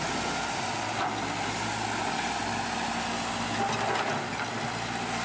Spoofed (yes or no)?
no